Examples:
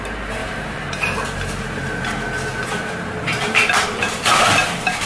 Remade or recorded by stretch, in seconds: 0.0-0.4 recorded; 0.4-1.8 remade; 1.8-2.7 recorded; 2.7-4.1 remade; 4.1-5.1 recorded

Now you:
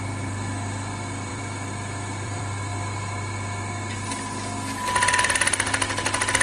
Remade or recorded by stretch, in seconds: 0.0-1.3 recorded; 1.3-2.4 remade; 2.4-6.4 recorded

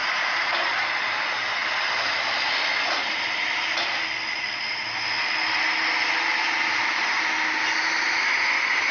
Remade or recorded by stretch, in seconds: 0.0-0.5 remade; 0.5-8.9 recorded

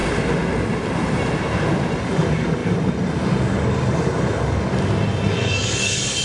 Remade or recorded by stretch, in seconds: 0.0-2.0 recorded; 2.0-4.7 remade; 4.7-5.3 recorded; 5.3-6.2 remade

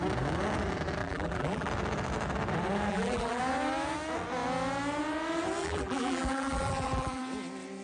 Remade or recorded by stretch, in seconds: 0.0-1.0 recorded; 1.0-1.7 remade; 1.7-2.9 recorded; 2.9-3.4 remade; 3.4-5.6 recorded; 5.6-7.2 remade; 7.2-7.8 recorded